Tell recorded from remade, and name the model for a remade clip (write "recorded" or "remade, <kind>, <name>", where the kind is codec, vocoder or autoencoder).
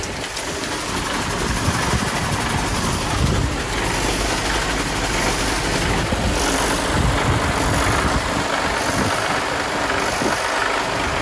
recorded